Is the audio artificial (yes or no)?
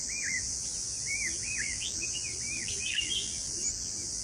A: yes